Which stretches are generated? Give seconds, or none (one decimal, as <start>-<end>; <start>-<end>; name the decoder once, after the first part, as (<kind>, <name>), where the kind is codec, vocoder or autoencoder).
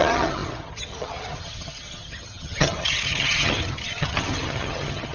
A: 0.0-5.1 (vocoder, HiFi-GAN)